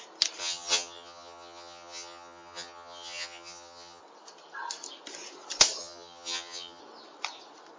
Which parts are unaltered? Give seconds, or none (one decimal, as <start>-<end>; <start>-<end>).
0.0-0.4; 4.0-5.8; 6.8-7.8